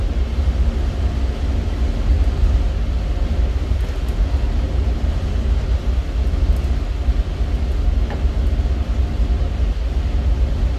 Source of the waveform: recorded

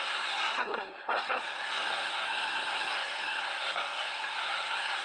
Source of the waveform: remade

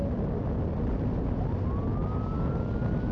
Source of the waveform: recorded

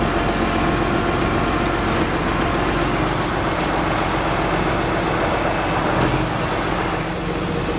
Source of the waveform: recorded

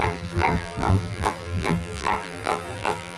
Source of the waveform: remade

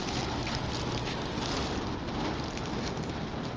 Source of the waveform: recorded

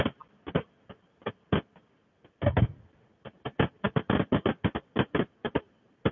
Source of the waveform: recorded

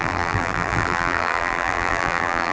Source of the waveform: remade